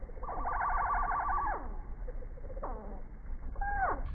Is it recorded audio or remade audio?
recorded